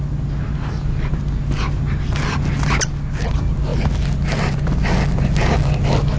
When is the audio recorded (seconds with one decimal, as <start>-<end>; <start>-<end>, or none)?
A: 0.0-6.2